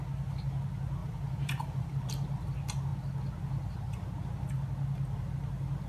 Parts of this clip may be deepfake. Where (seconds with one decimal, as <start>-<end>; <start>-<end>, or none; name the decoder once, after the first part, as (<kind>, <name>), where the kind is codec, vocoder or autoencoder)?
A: 1.0-2.1 (vocoder, BigVGAN v2)